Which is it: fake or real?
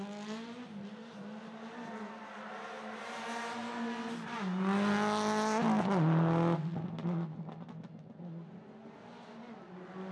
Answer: real